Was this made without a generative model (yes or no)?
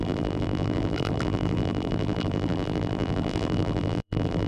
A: no